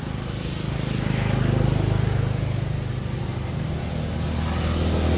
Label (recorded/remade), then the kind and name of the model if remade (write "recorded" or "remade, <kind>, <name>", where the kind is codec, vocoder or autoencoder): recorded